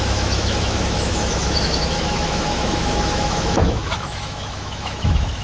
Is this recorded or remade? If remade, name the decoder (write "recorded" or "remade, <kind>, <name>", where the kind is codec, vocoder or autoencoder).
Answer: remade, autoencoder, DAC-VAE